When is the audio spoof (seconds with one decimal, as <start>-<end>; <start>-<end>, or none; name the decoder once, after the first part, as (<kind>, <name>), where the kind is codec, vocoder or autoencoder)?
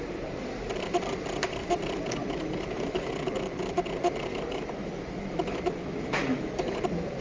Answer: 2.2-3.1 (autoencoder, DAC-VAE); 4.3-6.8